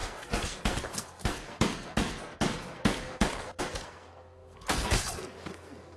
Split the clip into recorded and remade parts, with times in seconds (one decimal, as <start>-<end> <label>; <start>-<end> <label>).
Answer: 0.0-6.0 remade